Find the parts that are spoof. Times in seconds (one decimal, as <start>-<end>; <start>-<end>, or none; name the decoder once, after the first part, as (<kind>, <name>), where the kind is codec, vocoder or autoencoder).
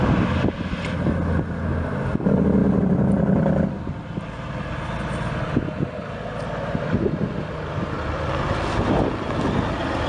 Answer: none